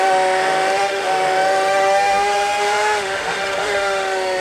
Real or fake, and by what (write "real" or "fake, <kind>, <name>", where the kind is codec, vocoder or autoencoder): fake, autoencoder, DAC-VAE